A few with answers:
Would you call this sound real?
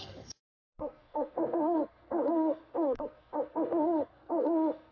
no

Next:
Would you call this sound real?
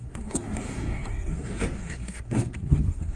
no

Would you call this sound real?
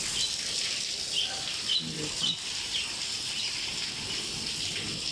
yes